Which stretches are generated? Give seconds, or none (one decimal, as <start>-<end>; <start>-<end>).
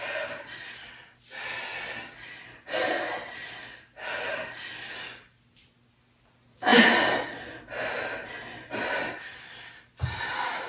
none